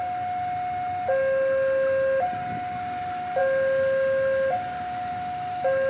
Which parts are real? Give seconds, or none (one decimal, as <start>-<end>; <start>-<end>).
0.0-5.9